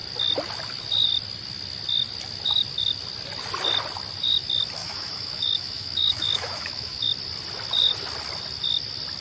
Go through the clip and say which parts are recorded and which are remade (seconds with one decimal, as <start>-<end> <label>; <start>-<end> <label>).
0.0-4.8 recorded; 4.8-7.1 remade; 7.1-9.2 recorded